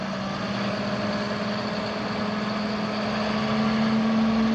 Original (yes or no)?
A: yes